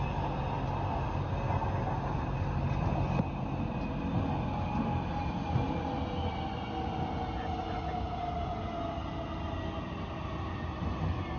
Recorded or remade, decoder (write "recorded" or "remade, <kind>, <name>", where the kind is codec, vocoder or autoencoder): recorded